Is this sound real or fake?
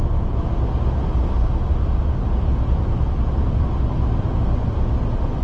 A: real